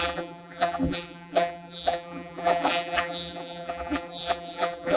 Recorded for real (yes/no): no